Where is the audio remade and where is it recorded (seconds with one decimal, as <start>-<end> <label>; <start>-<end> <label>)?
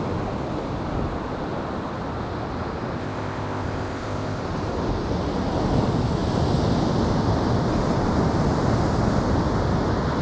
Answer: 0.0-3.0 recorded; 3.0-4.4 remade; 4.4-10.2 recorded